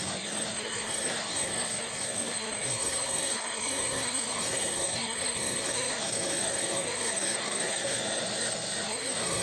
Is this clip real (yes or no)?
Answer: no